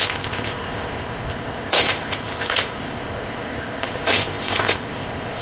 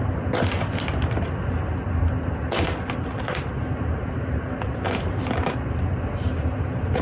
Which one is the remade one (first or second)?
first